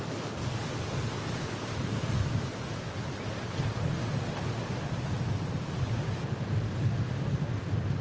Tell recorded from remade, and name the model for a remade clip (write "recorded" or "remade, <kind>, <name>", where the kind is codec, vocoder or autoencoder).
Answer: recorded